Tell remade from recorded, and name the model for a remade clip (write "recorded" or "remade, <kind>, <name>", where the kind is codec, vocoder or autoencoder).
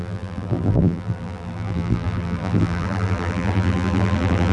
remade, vocoder, BigVGAN v2